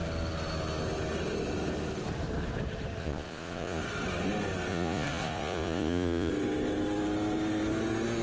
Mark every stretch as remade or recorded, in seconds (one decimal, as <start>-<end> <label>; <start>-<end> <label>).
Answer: 0.0-3.0 recorded; 3.0-3.8 remade; 3.8-4.7 recorded; 4.7-6.3 remade; 6.3-8.2 recorded